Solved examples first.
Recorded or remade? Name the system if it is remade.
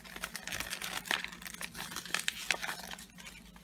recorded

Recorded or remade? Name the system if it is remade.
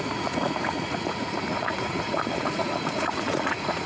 remade, vocoder, Vocos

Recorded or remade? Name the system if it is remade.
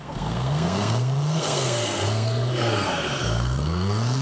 remade, codec, SNAC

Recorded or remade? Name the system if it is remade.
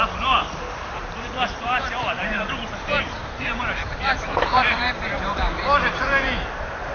remade, vocoder, BigVGAN v2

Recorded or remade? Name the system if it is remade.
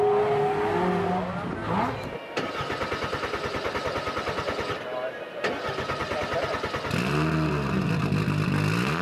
recorded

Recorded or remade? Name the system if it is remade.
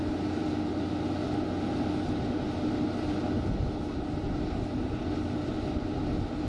recorded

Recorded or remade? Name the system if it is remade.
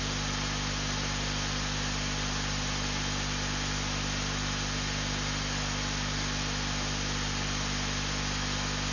recorded